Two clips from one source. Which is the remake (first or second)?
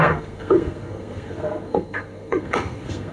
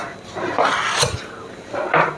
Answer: first